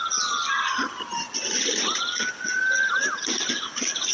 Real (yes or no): yes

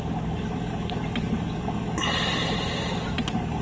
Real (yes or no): yes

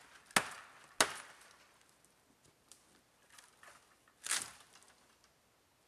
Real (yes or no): yes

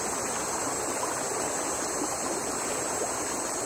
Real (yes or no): yes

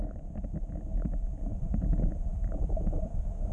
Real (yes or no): no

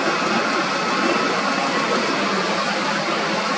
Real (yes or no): yes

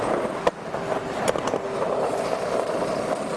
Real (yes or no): yes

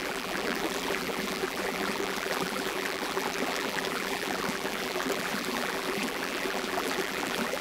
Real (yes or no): no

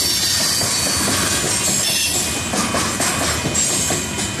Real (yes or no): yes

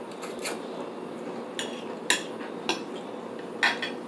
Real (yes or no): yes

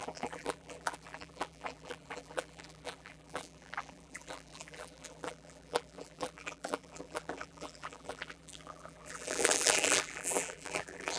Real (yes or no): no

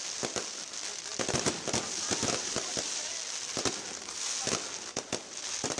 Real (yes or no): yes